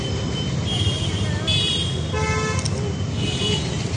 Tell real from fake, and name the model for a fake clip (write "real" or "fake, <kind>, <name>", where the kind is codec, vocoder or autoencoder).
real